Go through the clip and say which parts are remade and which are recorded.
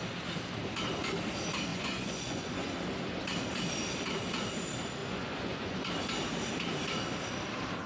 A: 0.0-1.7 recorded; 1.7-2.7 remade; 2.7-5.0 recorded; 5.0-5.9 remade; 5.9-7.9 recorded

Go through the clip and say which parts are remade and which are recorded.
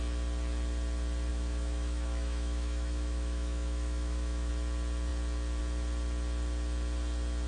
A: 0.0-1.3 recorded; 1.3-4.5 remade; 4.5-7.5 recorded